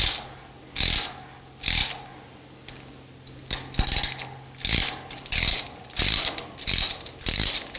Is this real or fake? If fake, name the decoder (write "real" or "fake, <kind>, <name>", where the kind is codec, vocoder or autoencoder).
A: real